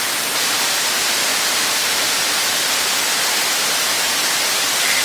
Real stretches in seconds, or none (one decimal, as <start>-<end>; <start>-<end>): 0.0-1.3; 2.7-5.0